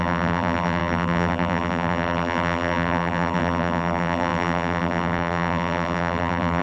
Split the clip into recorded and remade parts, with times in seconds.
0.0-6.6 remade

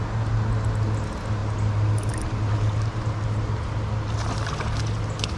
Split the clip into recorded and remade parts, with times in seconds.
0.0-5.4 recorded

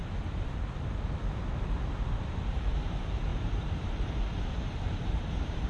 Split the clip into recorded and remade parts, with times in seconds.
0.0-1.9 recorded; 1.9-5.7 remade

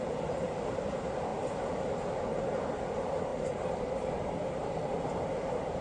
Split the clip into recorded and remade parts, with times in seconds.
0.0-1.3 recorded; 1.3-2.1 remade; 2.1-3.3 recorded; 3.3-4.9 remade; 4.9-5.8 recorded